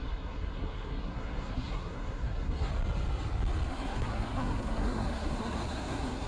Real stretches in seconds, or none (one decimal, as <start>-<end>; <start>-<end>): 2.7-3.7

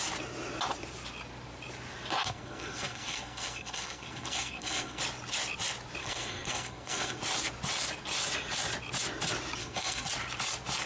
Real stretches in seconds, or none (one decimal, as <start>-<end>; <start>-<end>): 0.0-2.2; 5.0-6.0; 7.2-9.6; 10.1-10.9

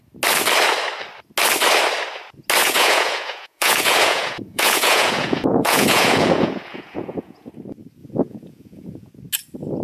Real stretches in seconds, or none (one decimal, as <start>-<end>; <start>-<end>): 0.0-2.6; 7.5-8.0; 9.1-9.8

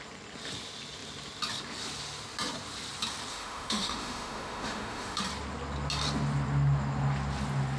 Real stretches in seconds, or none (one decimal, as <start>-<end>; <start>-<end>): 0.0-3.3; 5.2-7.8

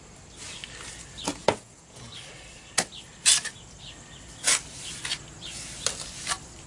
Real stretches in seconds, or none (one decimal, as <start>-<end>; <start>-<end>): 0.0-1.3; 2.1-6.7

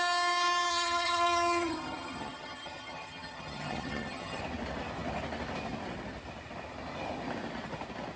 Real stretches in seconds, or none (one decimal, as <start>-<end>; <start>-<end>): 0.0-0.7; 4.4-8.2